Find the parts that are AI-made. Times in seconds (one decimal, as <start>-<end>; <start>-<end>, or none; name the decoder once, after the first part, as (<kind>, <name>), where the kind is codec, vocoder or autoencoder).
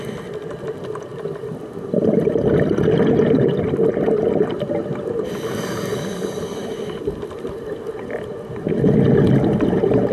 none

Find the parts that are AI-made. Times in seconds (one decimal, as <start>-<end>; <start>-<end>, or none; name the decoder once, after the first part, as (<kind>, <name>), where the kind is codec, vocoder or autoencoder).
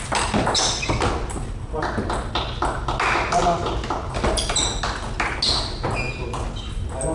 none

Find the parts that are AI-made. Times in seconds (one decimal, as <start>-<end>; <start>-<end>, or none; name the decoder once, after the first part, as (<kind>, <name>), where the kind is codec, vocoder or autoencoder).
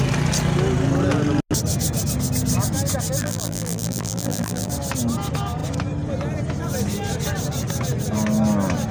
3.2-4.7 (vocoder, BigVGAN v2)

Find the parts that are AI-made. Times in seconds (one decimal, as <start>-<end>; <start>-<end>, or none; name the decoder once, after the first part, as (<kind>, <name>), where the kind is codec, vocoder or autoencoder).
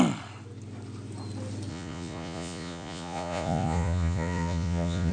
1.7-5.1 (vocoder, Vocos)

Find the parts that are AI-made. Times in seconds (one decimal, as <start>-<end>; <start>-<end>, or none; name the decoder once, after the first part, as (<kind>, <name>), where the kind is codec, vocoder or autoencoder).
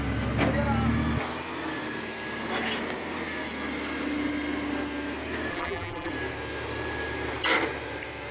5.5-6.1 (vocoder, BigVGAN v2)